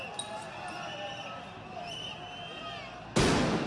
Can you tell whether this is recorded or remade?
recorded